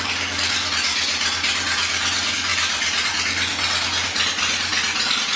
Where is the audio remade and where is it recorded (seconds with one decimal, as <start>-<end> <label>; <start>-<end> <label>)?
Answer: 0.0-2.5 recorded; 2.5-3.1 remade; 3.1-5.4 recorded